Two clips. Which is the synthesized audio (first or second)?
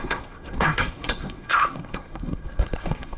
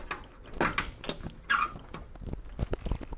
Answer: first